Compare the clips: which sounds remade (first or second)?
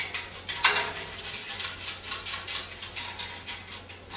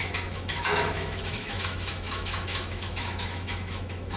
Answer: second